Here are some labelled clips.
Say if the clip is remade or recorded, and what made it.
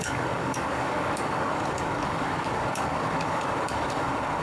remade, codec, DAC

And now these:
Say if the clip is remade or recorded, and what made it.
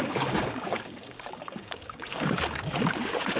remade, codec, DAC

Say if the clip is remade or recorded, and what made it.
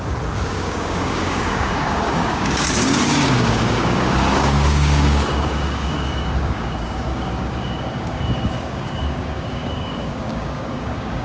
remade, codec, DAC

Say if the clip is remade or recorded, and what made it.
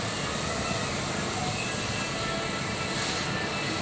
recorded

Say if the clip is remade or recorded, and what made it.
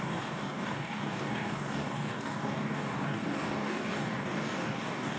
remade, codec, DAC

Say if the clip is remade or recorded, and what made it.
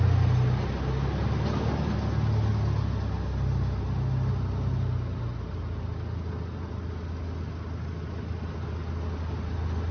recorded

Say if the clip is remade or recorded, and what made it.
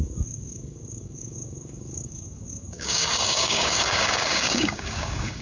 remade, codec, DAC